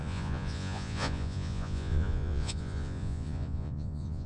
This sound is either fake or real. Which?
fake